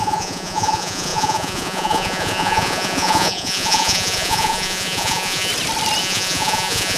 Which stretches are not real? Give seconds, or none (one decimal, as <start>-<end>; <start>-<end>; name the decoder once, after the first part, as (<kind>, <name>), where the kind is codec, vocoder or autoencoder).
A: 0.0-5.5 (vocoder, Vocos); 6.0-7.0